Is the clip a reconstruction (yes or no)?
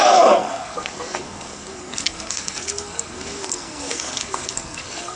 yes